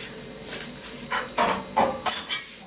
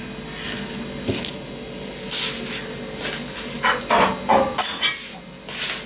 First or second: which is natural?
second